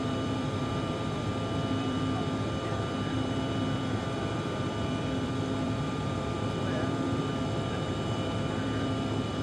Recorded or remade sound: remade